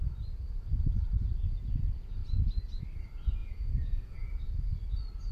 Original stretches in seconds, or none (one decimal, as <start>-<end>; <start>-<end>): 0.0-3.4; 4.4-5.3